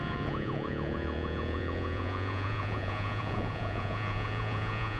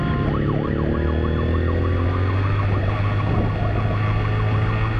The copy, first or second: first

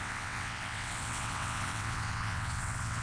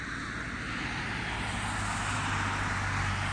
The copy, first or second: first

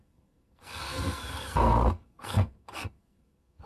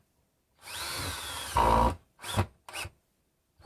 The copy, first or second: first